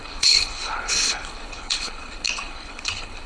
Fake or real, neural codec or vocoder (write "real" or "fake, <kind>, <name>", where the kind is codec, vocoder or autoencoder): fake, codec, HILCodec